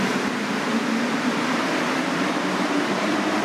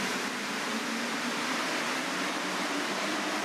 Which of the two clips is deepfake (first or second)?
first